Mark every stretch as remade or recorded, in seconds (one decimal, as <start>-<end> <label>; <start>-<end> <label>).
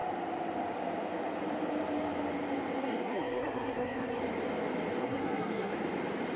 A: 0.0-2.8 recorded; 2.8-4.2 remade; 4.2-5.0 recorded; 5.0-5.7 remade; 5.7-6.4 recorded